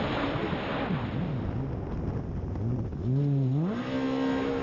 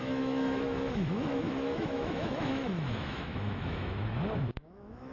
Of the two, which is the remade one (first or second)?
second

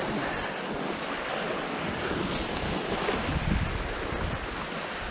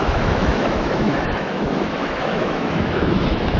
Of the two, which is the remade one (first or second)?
second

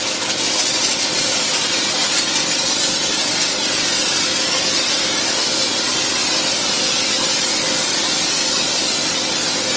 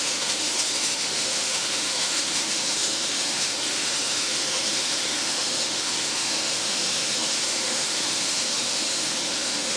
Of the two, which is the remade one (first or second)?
second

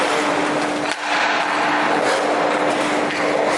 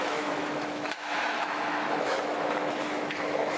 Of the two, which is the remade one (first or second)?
second